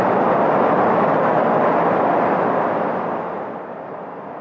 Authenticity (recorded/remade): recorded